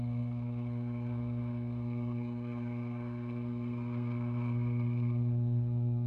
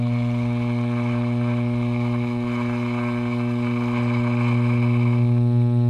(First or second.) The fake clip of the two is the first